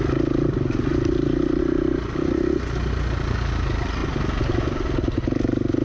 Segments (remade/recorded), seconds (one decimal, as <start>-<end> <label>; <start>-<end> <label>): 0.0-0.9 recorded; 0.9-1.6 remade; 1.6-5.8 recorded